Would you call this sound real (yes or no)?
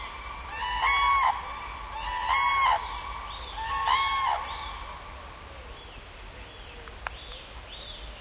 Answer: yes